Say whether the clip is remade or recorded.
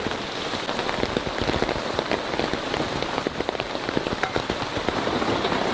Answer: recorded